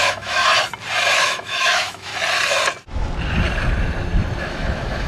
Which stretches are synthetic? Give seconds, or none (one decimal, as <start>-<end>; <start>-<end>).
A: 0.0-0.4; 1.2-2.1; 4.4-5.1